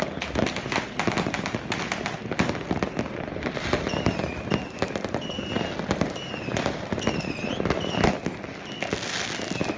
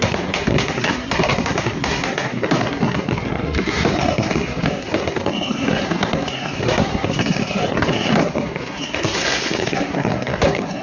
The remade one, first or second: second